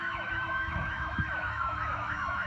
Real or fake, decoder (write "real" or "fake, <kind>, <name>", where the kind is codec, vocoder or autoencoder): fake, autoencoder, DAC-VAE